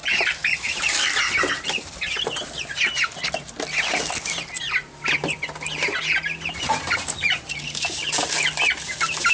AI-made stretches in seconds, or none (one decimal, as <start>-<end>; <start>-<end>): 0.0-1.2